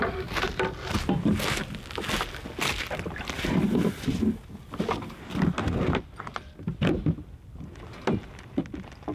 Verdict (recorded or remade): recorded